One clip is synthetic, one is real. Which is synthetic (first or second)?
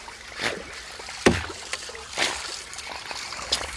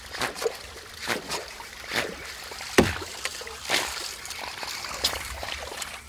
second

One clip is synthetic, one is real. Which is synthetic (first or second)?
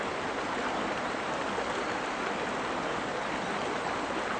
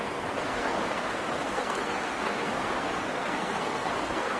second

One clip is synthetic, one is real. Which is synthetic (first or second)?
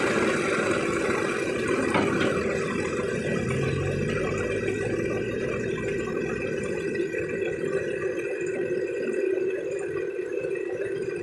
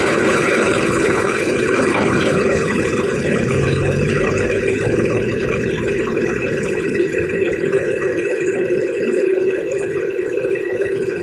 second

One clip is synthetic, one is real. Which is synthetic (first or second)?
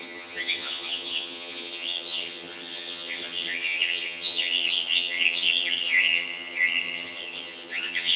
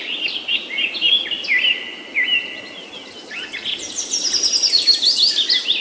first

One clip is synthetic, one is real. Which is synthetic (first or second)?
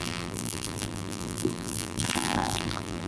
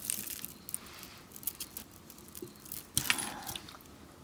first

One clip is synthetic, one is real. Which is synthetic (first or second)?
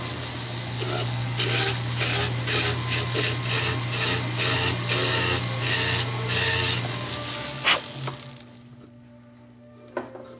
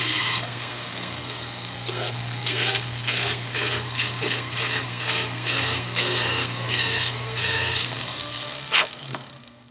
second